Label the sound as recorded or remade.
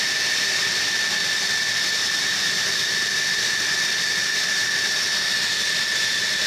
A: recorded